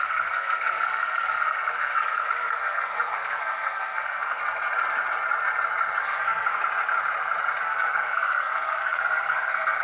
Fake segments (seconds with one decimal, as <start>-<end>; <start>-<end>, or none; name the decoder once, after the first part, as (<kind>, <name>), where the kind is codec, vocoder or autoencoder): 0.0-4.4 (codec, SNAC); 6.0-6.6; 7.6-9.8